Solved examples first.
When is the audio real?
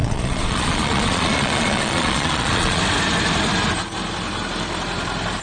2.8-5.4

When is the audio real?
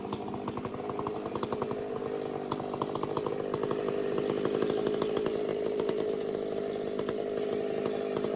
0.0-8.4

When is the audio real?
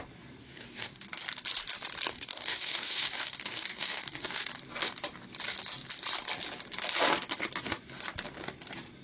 0.0-0.4; 1.0-2.1; 4.5-9.0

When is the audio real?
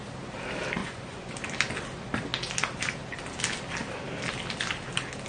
0.0-0.8; 1.3-5.3